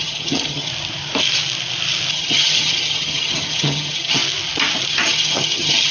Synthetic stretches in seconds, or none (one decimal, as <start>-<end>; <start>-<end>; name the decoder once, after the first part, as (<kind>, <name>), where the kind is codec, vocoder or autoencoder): 0.0-0.7 (vocoder, HiFi-GAN); 2.1-4.2; 4.9-5.9